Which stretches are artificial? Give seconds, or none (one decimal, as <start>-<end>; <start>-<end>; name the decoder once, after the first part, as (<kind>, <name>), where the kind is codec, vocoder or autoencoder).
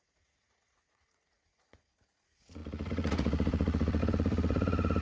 0.0-5.0 (vocoder, Vocos)